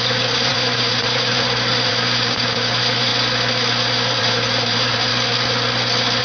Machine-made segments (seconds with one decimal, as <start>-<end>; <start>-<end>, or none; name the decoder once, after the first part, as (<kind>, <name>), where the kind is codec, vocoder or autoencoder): 0.0-3.1 (vocoder, BigVGAN v2); 4.2-5.1